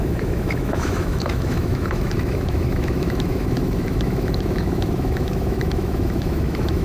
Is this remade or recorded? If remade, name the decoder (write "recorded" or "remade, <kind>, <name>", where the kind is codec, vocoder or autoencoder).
remade, autoencoder, DAC-VAE